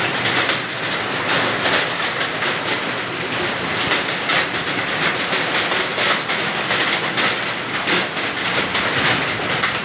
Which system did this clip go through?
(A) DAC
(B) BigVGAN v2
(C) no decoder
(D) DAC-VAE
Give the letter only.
C